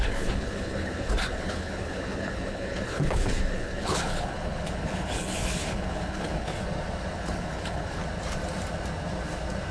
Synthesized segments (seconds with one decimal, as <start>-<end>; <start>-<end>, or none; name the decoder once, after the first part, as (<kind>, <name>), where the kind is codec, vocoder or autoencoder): 0.0-6.5 (codec, HILCodec); 7.2-8.0